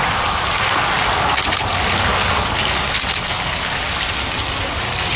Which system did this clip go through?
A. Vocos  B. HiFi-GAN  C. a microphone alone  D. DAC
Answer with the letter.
C